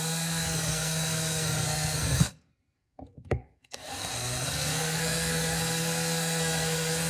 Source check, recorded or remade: remade